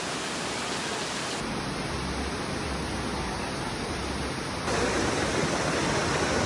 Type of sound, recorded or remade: recorded